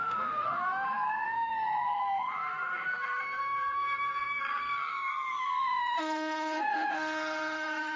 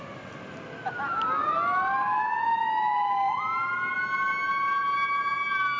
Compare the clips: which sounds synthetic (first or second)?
first